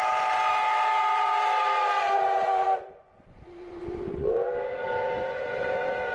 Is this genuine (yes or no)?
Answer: no